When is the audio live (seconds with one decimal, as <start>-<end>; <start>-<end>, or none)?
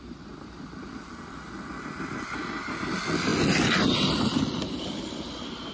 0.0-5.7